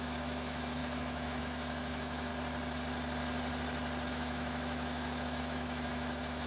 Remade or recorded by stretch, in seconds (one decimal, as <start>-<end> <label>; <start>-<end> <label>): 0.0-2.3 remade; 2.3-4.1 recorded; 4.1-6.5 remade